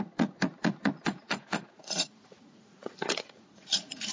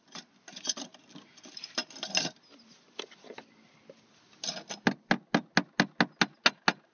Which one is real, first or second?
second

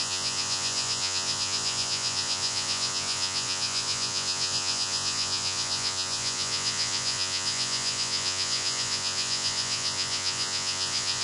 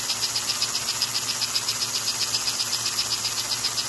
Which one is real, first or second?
second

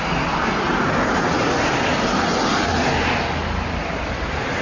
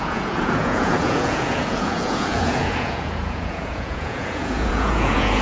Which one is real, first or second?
first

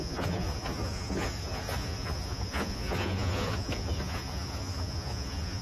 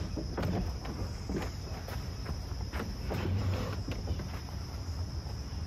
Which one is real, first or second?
second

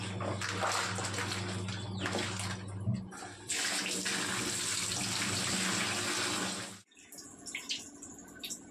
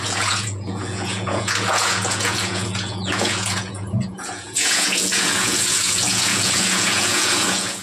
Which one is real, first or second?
first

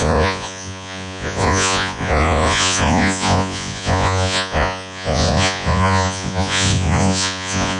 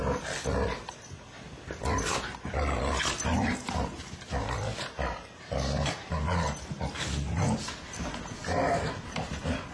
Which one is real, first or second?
second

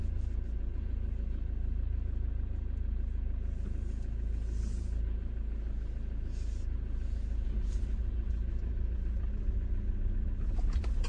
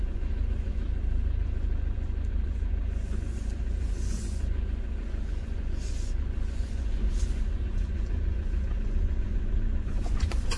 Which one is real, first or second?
first